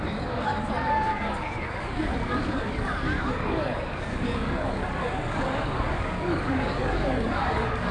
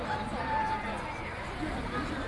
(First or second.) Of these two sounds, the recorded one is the second